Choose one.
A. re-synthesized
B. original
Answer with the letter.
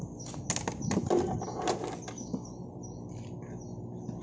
B